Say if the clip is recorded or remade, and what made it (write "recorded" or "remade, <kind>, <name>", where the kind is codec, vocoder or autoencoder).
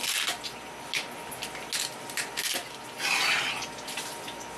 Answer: recorded